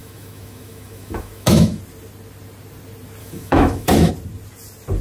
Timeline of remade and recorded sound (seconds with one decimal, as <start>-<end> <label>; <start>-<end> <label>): 0.0-1.8 remade; 1.8-3.2 recorded; 3.2-4.1 remade; 4.1-5.0 recorded